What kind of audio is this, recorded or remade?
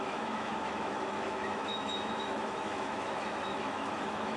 remade